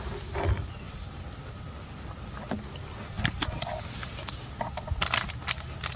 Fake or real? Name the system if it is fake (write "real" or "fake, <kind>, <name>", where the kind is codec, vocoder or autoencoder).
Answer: real